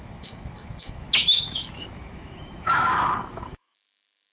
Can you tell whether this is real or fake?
fake